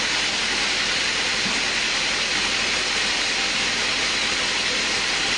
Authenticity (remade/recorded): recorded